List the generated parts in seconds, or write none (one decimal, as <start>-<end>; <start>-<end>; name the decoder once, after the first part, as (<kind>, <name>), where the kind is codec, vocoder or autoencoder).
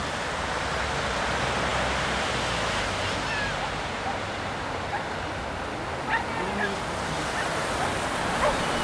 none